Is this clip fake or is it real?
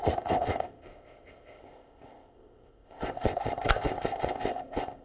fake